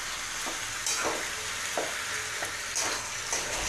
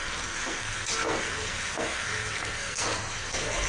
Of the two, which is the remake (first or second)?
second